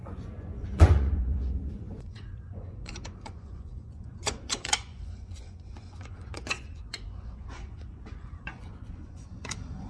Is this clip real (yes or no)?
no